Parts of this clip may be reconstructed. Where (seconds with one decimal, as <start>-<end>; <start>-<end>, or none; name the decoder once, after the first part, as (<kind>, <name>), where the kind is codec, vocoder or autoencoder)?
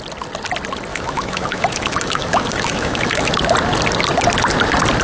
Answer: 0.9-3.3 (autoencoder, DAC-VAE)